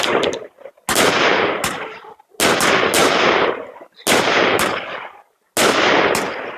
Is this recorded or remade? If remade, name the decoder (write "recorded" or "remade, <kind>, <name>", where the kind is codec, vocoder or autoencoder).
recorded